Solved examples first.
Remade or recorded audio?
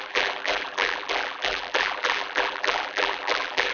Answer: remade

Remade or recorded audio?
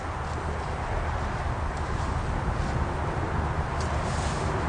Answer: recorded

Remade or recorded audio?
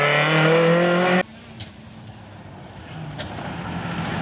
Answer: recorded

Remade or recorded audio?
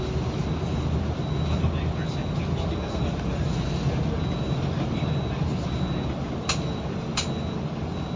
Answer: recorded